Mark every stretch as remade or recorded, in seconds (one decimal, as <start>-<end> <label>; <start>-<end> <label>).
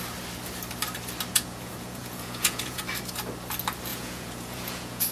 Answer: 0.0-1.3 recorded; 1.3-2.8 remade; 2.8-3.9 recorded; 3.9-5.1 remade